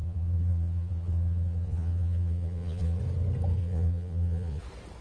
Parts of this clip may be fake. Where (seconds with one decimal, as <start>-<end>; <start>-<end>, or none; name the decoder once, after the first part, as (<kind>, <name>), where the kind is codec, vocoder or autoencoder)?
0.0-3.0 (vocoder, Vocos); 3.6-4.6